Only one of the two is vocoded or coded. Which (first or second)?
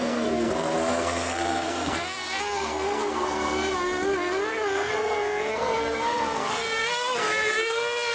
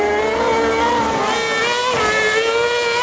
first